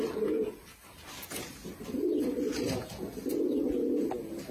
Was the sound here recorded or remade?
recorded